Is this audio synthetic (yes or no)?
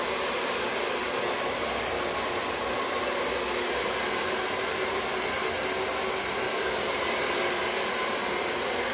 no